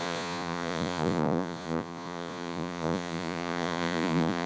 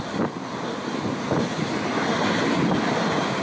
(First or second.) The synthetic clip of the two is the first